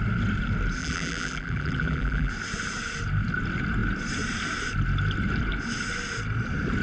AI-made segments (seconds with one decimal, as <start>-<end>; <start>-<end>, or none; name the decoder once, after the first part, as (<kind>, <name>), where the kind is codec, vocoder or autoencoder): 0.8-2.3 (vocoder, BigVGAN v2)